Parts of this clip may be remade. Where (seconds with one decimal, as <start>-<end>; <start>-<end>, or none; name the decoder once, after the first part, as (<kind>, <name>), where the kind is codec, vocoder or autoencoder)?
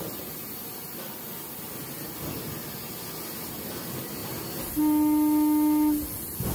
none